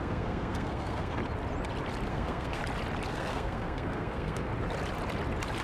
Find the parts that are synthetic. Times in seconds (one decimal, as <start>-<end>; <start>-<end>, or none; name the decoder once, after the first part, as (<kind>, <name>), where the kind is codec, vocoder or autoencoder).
0.0-1.2 (codec, SNAC); 2.1-2.6; 3.1-4.5